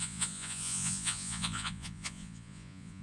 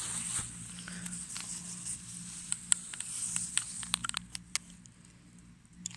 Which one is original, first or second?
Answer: second